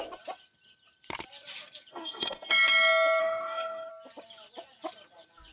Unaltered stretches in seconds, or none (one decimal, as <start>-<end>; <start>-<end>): 0.0-1.9; 2.5-3.2; 3.9-5.5